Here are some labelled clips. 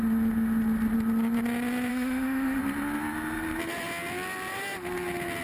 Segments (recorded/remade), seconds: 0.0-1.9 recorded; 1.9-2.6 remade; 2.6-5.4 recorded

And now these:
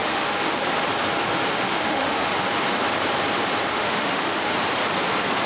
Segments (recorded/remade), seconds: 0.0-0.6 remade; 0.6-1.5 recorded; 1.5-2.3 remade; 2.3-3.7 recorded; 3.7-4.5 remade; 4.5-5.5 recorded

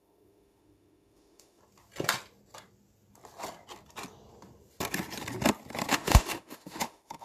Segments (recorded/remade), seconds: 0.0-1.6 remade; 1.6-5.9 recorded; 5.9-7.2 remade

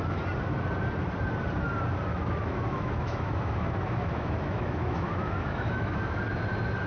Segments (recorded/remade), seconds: 0.0-2.1 recorded; 2.1-6.2 remade; 6.2-6.9 recorded

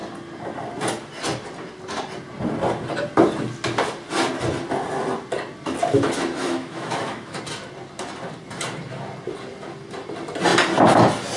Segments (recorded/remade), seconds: 0.0-6.4 recorded; 6.4-7.4 remade; 7.4-11.4 recorded

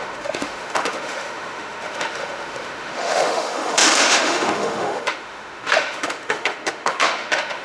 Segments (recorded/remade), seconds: 0.0-7.6 remade